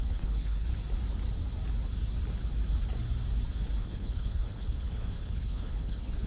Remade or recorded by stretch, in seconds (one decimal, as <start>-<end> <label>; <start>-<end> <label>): 0.0-0.7 remade; 0.7-3.8 recorded; 3.8-6.3 remade